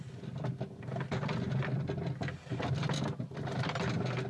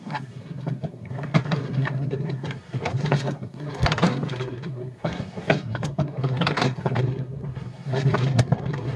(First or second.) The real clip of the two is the first